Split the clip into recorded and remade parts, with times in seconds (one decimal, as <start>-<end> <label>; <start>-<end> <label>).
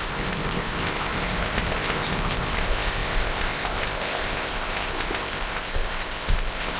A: 0.0-6.8 remade